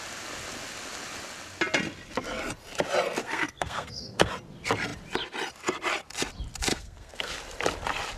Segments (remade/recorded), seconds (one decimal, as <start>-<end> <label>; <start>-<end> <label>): 0.0-3.2 recorded; 3.2-4.3 remade; 4.3-6.7 recorded; 6.7-7.3 remade; 7.3-8.2 recorded